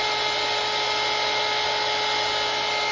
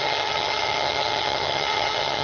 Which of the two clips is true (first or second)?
first